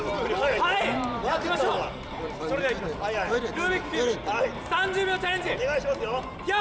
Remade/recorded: recorded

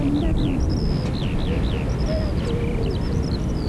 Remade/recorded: recorded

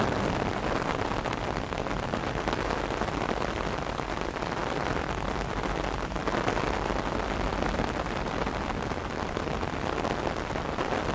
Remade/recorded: recorded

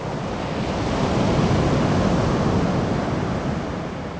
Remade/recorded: recorded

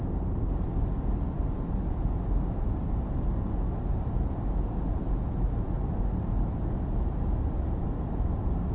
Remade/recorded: recorded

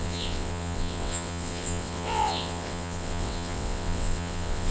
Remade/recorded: remade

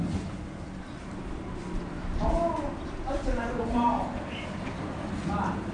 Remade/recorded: recorded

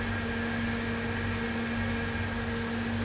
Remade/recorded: recorded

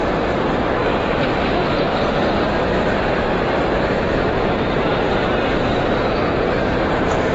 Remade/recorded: remade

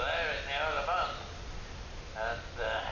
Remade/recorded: recorded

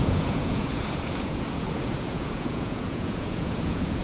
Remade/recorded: remade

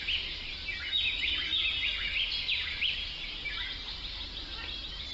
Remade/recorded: recorded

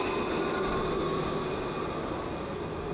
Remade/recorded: recorded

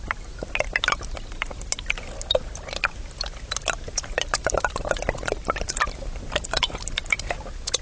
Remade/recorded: recorded